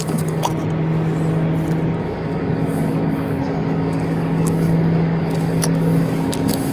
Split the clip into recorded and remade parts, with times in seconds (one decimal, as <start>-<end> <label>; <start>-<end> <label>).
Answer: 0.0-0.5 remade; 0.5-2.0 recorded; 2.0-6.7 remade